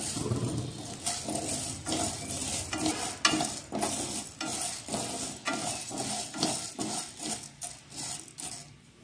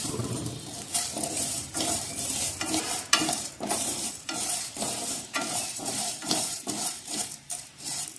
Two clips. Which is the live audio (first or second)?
first